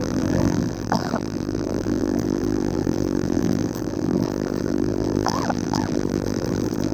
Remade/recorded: remade